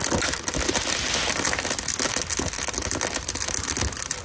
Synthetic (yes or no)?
no